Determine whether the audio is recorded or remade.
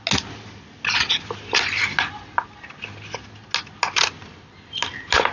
recorded